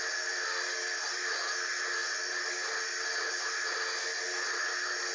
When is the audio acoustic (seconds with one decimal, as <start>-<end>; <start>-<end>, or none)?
0.0-5.1